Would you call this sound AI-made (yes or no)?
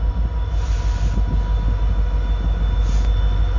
no